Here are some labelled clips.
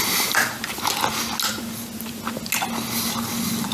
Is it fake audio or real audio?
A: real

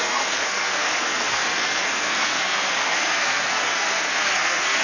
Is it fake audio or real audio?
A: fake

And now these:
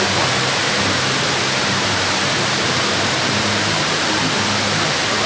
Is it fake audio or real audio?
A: fake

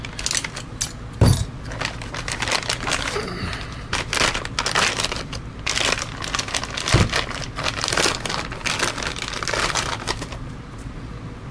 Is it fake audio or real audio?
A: real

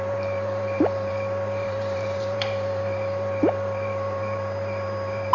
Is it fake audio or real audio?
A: fake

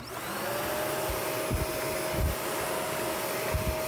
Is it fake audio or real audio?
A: real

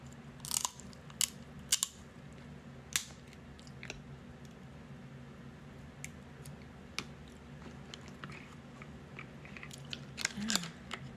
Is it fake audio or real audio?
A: real